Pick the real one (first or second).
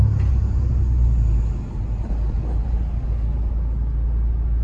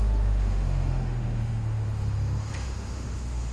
first